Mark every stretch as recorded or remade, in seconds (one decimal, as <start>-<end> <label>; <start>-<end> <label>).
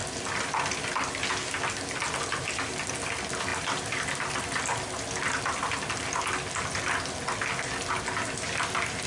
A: 0.0-1.2 remade; 1.2-3.5 recorded; 3.5-5.9 remade; 5.9-9.1 recorded